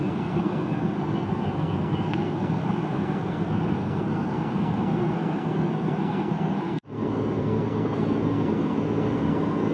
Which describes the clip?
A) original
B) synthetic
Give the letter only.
B